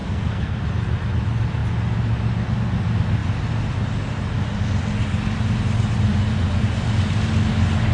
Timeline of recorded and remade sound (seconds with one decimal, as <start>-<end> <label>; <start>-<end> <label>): 0.0-0.6 remade; 0.6-7.9 recorded